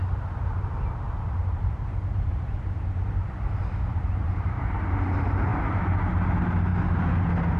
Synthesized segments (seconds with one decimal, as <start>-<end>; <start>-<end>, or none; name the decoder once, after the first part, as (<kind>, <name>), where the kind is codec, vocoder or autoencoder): 0.5-3.3 (vocoder, BigVGAN v2); 3.9-4.8